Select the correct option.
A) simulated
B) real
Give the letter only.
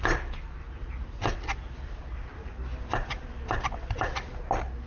B